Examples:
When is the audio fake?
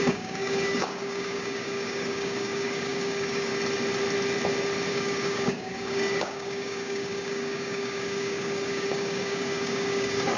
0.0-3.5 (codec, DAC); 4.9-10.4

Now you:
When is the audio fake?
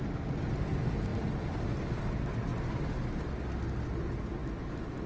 1.1-1.7 (vocoder, BigVGAN v2)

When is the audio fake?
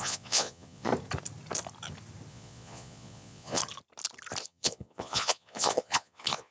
0.0-0.9 (vocoder, Vocos); 2.3-3.6; 4.4-6.5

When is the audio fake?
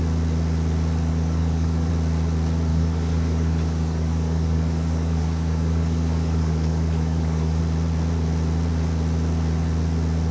1.1-1.9 (codec, DAC); 2.7-7.6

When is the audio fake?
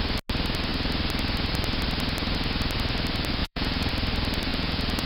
3.4-3.9 (vocoder, Vocos); 4.5-5.1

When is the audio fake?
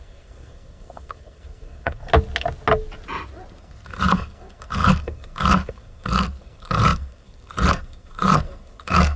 0.0-2.1 (codec, SNAC); 3.6-9.2